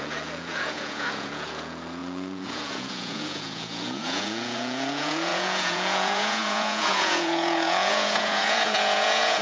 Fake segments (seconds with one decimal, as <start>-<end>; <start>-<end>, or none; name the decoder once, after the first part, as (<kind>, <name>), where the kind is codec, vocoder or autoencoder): 0.0-9.4 (vocoder, Vocos)